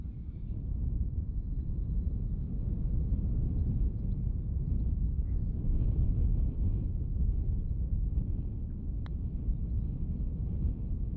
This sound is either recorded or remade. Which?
recorded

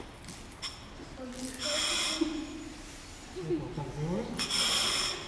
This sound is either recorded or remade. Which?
recorded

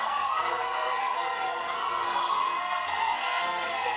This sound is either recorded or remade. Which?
remade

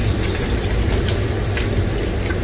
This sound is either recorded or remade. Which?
recorded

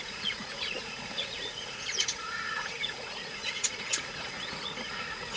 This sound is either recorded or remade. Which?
remade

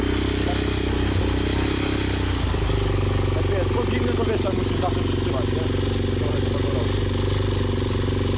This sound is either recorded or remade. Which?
recorded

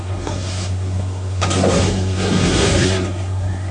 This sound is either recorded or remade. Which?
remade